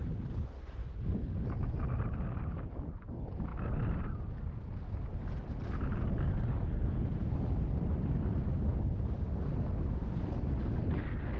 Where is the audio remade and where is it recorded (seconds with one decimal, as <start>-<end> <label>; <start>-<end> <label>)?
0.0-11.4 recorded